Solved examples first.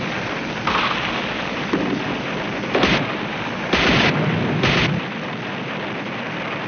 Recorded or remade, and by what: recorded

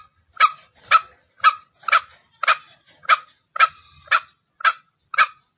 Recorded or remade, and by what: recorded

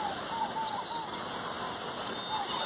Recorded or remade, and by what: recorded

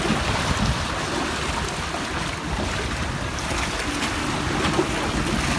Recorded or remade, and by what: recorded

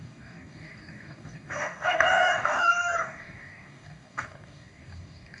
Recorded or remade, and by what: remade, codec, DAC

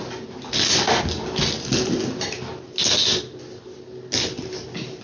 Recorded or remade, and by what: recorded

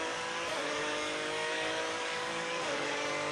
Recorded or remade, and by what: remade, codec, DAC